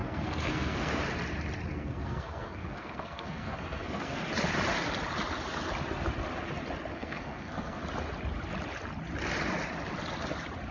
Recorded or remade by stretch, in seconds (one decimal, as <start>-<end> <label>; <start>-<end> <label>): 0.0-1.0 remade; 1.0-1.7 recorded; 1.7-4.2 remade; 4.2-6.9 recorded; 6.9-7.8 remade; 7.8-10.7 recorded

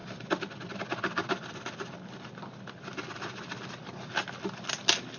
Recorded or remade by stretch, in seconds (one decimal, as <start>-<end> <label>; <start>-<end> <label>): 0.0-5.2 recorded

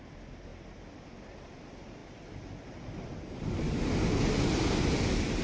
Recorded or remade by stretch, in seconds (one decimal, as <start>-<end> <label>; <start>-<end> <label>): 0.0-5.4 recorded

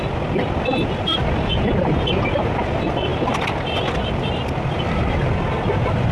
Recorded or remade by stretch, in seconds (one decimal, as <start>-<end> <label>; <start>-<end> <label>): 0.0-6.1 recorded

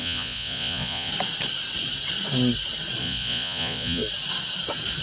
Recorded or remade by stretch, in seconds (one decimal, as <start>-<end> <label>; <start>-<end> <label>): 0.0-1.1 remade; 1.1-3.0 recorded; 3.0-4.0 remade; 4.0-5.0 recorded